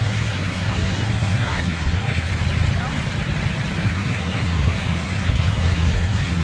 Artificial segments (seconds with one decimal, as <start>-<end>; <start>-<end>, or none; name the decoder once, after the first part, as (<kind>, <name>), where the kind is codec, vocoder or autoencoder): 0.0-2.3 (codec, SNAC); 3.8-6.4